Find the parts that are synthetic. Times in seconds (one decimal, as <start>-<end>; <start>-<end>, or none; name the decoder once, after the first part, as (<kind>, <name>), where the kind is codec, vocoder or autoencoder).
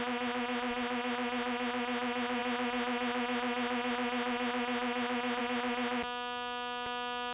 none